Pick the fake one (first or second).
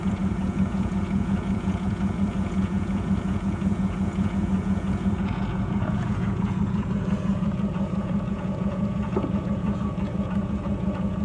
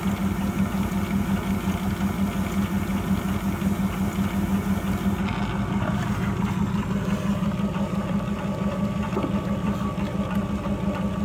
first